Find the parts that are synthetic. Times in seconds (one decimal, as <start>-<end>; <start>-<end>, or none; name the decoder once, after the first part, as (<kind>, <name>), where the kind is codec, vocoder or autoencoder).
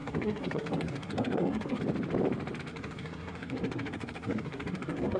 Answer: 0.0-1.8 (codec, SNAC); 2.7-5.2